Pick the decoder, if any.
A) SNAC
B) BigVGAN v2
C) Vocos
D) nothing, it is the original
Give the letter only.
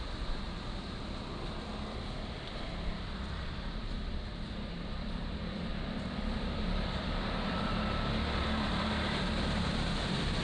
B